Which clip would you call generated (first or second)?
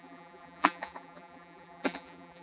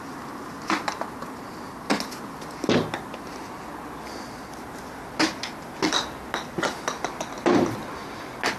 first